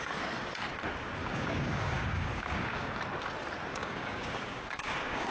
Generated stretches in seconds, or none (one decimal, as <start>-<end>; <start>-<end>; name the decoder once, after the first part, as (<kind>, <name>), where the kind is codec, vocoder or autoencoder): 1.2-3.0 (codec, DAC); 3.7-5.3